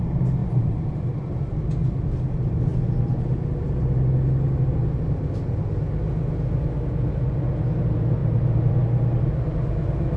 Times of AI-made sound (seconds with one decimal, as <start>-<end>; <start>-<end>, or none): 0.4-1.2; 8.2-8.8